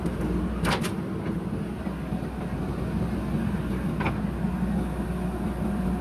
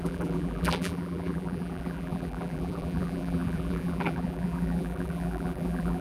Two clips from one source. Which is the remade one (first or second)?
second